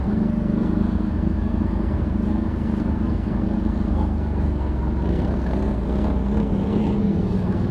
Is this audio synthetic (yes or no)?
yes